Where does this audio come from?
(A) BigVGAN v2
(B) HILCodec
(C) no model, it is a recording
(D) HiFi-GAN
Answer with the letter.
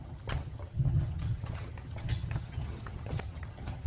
D